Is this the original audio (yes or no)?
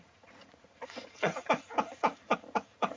no